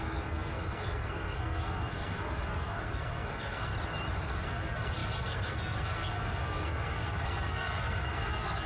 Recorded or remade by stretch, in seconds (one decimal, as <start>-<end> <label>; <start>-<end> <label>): 0.0-3.7 remade; 3.7-4.3 recorded; 4.3-8.7 remade